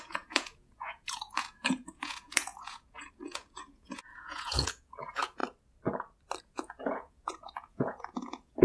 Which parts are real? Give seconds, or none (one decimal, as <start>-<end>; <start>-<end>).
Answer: 5.4-6.4